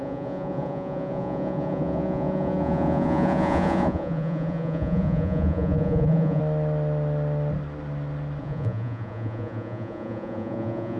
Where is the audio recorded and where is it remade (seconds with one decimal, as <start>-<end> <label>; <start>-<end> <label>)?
0.0-6.4 remade; 6.4-8.4 recorded; 8.4-11.0 remade